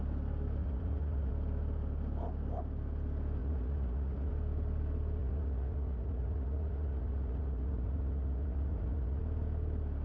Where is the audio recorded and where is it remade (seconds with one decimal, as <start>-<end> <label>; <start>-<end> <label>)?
0.0-0.6 recorded; 0.6-1.3 remade; 1.3-3.4 recorded; 3.4-4.3 remade; 4.3-5.2 recorded; 5.2-9.2 remade; 9.2-10.0 recorded